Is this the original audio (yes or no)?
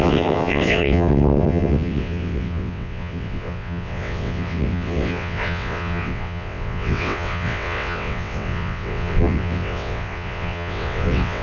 no